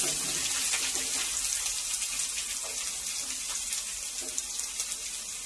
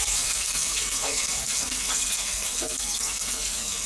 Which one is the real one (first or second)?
first